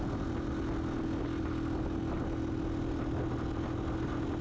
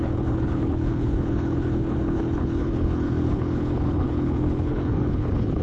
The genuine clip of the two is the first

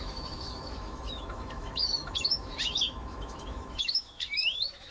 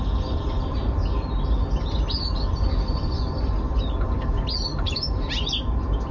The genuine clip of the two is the second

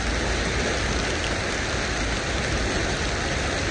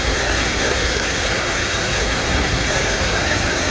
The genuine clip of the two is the first